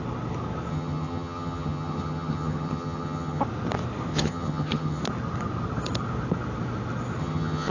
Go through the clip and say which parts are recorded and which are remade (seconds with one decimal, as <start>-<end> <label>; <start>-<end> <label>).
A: 0.0-0.7 recorded; 0.7-3.4 remade; 3.4-4.1 recorded; 4.1-5.0 remade; 5.0-7.2 recorded; 7.2-7.7 remade